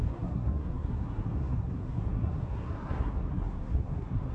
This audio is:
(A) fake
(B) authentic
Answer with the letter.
A